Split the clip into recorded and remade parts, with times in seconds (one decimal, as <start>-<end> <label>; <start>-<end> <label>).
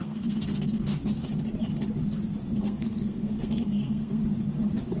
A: 0.0-0.9 remade; 0.9-2.6 recorded; 2.6-4.2 remade; 4.2-5.0 recorded